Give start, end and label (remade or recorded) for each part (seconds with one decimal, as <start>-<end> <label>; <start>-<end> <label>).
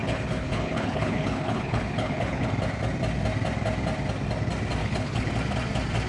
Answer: 0.0-2.5 remade; 2.5-4.8 recorded; 4.8-5.3 remade; 5.3-6.1 recorded